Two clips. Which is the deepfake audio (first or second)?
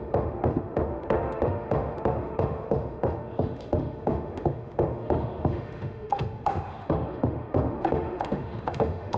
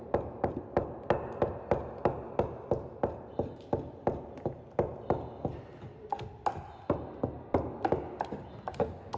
first